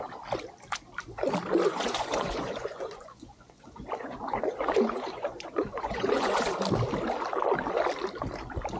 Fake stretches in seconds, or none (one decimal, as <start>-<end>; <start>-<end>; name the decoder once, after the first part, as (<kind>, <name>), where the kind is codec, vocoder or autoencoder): 1.7-6.4 (vocoder, Vocos)